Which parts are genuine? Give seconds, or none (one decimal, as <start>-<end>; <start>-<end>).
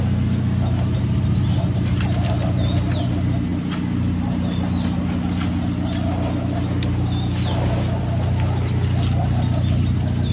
0.0-10.3